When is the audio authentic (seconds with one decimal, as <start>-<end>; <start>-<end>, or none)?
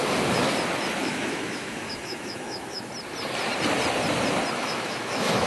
0.0-1.0; 2.9-4.6